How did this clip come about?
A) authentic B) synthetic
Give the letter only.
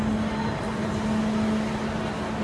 A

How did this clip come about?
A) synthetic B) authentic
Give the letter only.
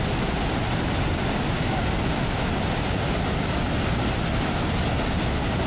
B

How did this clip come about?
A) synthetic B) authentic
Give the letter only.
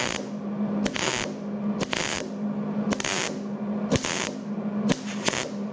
B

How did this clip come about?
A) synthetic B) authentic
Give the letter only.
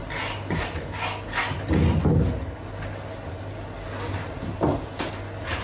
B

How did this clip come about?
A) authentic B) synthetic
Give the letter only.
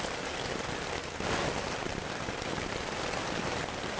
A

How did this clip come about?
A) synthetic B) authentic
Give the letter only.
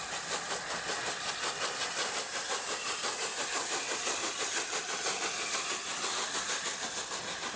B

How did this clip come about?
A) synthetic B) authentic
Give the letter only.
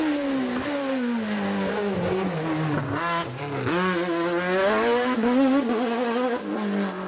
B